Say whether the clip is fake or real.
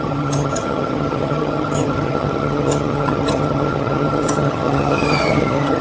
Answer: fake